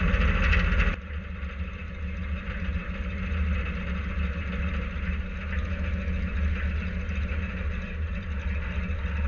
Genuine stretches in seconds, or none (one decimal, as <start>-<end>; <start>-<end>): 0.0-9.3